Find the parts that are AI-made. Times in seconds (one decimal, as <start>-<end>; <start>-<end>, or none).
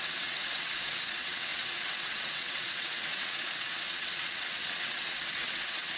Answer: 0.0-6.0